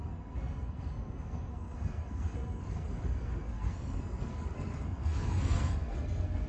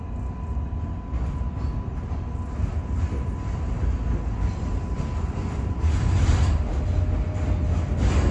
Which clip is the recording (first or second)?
second